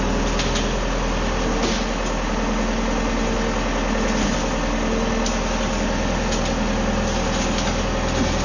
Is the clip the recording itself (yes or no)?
yes